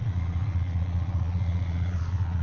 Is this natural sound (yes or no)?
no